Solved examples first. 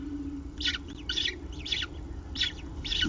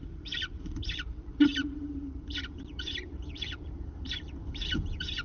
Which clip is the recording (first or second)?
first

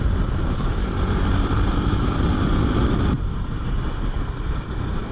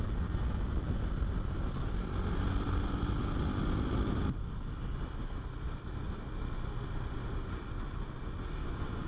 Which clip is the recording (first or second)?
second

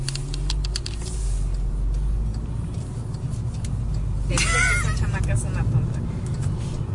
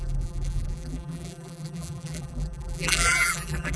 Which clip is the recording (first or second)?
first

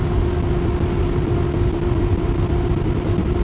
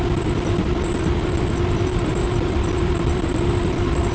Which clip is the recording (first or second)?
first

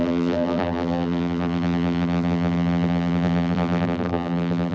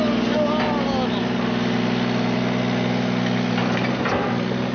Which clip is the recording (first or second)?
second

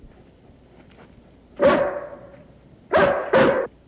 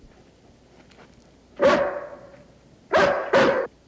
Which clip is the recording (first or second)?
second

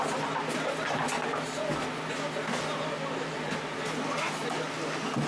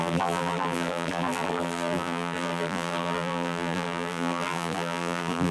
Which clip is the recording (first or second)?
first